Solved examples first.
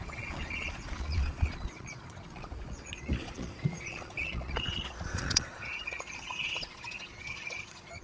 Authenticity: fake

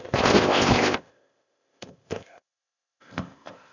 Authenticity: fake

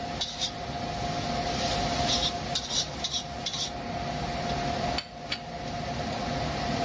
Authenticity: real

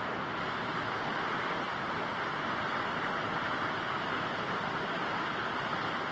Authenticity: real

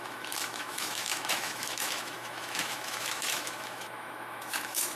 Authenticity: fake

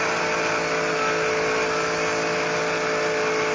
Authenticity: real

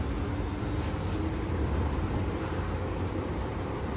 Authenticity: real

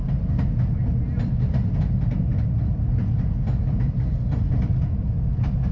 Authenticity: real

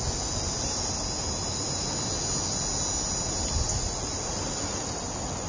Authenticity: real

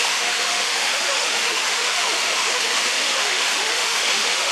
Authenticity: fake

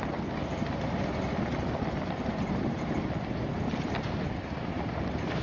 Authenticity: real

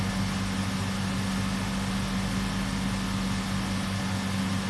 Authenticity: real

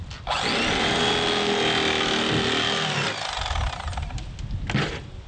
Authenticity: real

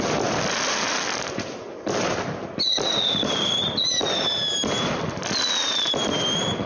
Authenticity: real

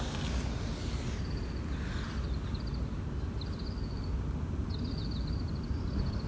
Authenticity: real